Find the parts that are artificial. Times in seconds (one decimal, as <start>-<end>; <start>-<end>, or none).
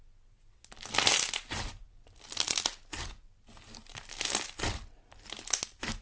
none